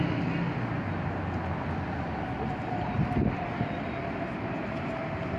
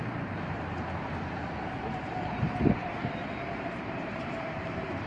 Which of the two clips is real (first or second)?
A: first